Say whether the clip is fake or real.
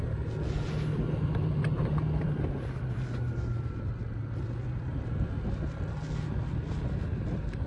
real